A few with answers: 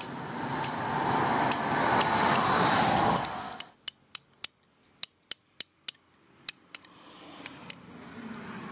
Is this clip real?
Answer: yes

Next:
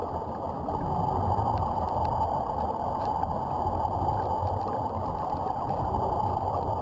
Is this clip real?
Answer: yes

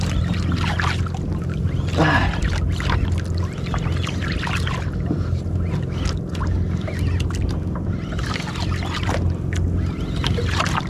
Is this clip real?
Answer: yes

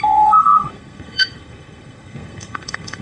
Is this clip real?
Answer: no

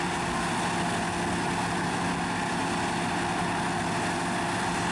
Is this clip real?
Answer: yes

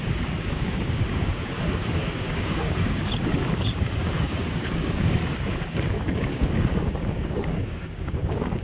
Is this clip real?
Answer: no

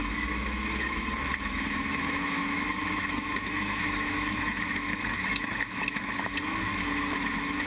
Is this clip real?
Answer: no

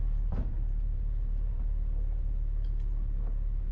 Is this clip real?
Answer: no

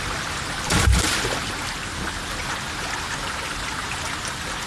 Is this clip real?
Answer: yes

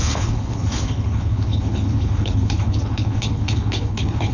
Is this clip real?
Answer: no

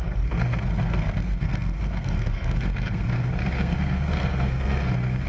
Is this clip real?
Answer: no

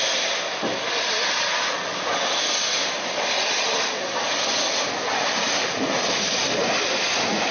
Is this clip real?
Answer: yes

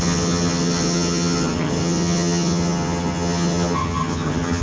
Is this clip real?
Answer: no